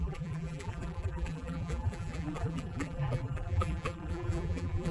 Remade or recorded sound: remade